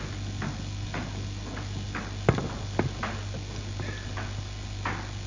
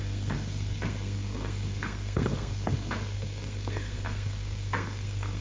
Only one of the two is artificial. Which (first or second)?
second